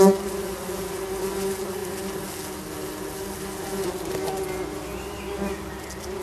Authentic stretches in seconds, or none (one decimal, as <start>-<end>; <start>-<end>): 0.0-6.2